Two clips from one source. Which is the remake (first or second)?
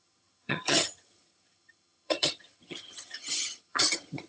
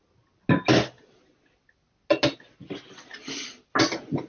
first